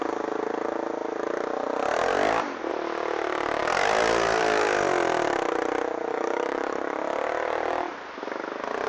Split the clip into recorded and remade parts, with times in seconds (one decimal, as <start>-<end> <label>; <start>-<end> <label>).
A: 0.0-6.1 recorded; 6.1-6.8 remade; 6.8-8.9 recorded